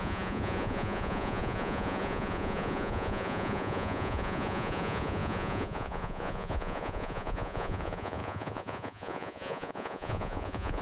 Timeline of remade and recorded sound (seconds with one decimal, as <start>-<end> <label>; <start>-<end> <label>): 0.0-10.8 remade